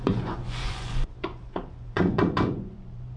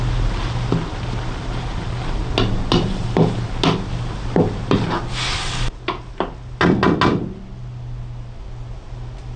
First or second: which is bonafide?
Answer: second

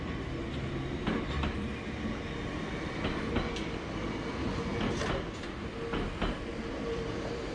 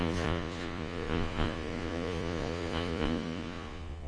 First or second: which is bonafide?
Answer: first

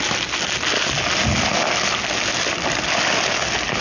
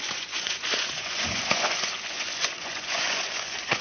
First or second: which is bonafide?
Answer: first